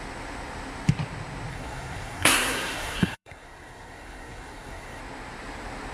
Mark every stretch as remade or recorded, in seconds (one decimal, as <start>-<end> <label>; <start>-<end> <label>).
0.0-1.5 recorded; 1.5-5.0 remade; 5.0-5.9 recorded